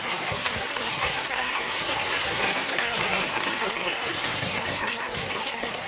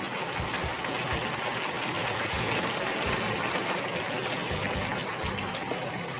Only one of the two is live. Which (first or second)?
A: second